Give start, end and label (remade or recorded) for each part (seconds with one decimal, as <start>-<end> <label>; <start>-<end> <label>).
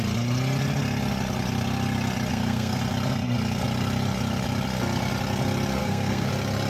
0.0-2.3 recorded; 2.3-2.8 remade; 2.8-5.8 recorded; 5.8-6.3 remade; 6.3-6.7 recorded